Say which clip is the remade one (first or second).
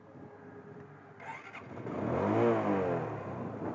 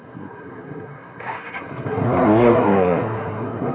second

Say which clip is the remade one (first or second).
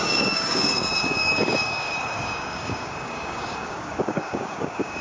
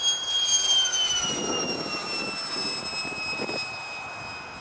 first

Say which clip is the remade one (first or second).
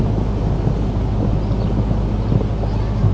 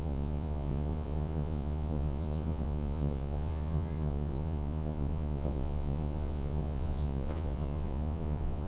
second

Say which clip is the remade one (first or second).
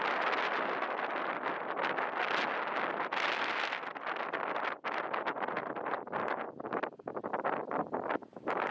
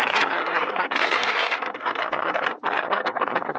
second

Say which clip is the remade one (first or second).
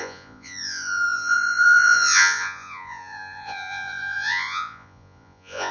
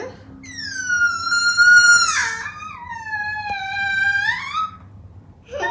first